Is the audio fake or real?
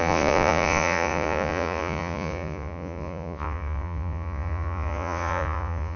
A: fake